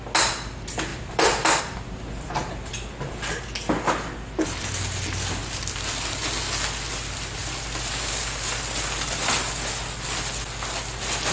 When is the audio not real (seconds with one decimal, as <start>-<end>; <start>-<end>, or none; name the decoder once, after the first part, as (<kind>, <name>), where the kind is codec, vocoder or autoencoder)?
0.9-1.6 (vocoder, BigVGAN v2); 5.4-6.3; 7.4-7.9